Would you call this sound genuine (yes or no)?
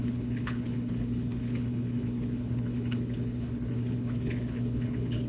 no